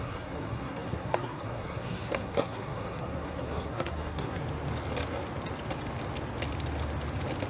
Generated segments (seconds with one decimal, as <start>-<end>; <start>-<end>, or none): 0.0-4.4